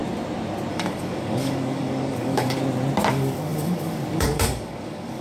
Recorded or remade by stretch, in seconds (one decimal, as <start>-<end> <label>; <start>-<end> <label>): 0.0-0.7 recorded; 0.7-2.6 remade; 2.6-3.1 recorded; 3.1-5.2 remade